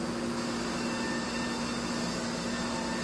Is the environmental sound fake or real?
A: real